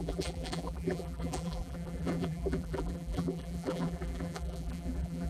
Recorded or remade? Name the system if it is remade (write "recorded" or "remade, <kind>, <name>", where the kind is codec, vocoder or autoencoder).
remade, vocoder, BigVGAN v2